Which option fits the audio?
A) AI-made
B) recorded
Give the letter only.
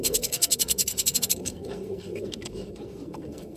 A